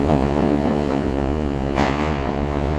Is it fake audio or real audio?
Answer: fake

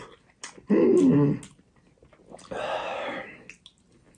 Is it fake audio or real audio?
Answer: real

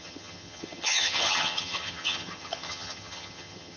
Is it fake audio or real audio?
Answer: fake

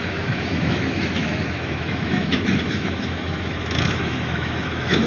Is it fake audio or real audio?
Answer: fake